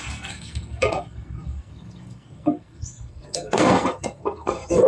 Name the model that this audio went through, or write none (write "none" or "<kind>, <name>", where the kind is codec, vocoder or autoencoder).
codec, SNAC